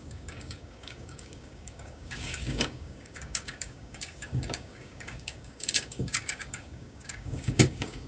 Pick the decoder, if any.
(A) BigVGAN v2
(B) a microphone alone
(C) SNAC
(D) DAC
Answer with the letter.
D